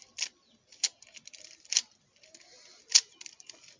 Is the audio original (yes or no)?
yes